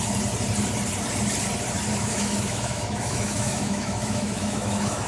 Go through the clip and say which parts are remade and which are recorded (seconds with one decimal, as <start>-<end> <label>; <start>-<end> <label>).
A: 0.0-1.9 recorded; 1.9-5.1 remade